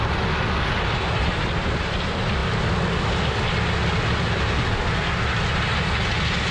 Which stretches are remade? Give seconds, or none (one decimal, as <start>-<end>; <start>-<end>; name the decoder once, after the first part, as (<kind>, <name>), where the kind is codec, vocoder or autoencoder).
none